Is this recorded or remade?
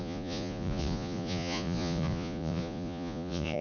remade